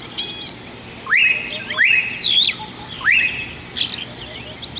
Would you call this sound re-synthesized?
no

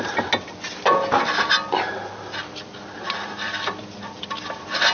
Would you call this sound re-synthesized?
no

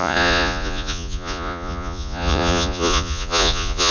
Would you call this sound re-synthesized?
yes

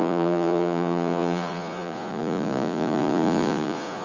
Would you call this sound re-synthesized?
yes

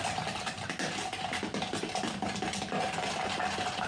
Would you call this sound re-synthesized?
no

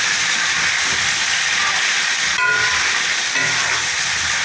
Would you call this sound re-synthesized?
no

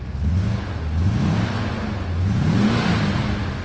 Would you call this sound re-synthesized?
no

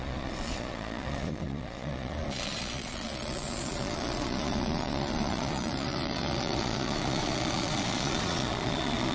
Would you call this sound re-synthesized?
yes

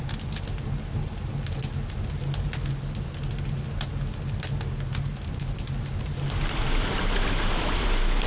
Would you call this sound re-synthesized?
no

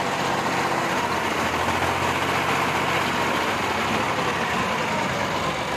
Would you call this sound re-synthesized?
no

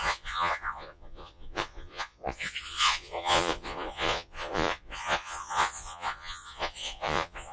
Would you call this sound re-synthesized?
yes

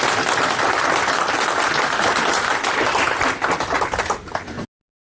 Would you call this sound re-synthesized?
no